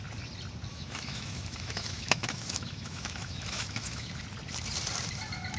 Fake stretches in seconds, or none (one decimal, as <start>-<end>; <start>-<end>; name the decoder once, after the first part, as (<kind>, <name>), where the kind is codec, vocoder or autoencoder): 0.7-4.1 (autoencoder, DAC-VAE)